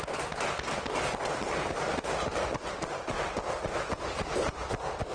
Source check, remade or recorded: recorded